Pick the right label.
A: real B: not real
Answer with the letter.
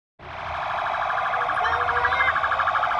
A